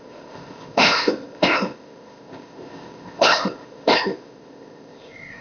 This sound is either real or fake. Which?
fake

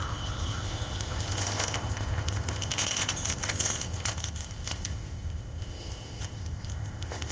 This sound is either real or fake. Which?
fake